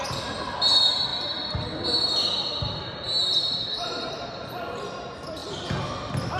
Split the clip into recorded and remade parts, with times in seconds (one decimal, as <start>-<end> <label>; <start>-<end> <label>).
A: 0.0-6.4 recorded